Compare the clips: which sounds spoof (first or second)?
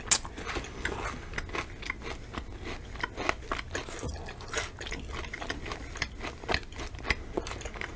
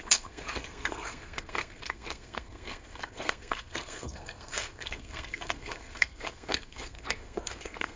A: second